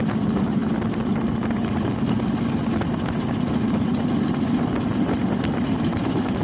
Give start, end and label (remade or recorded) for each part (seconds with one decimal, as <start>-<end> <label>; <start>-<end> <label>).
0.0-6.4 recorded